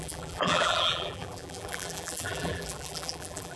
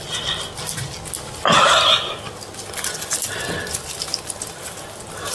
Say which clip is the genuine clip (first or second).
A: second